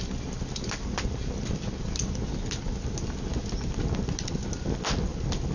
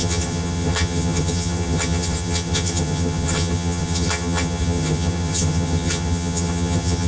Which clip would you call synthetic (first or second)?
second